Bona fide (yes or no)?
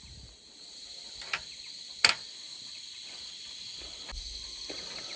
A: yes